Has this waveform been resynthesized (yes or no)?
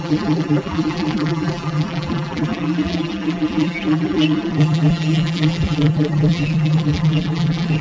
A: yes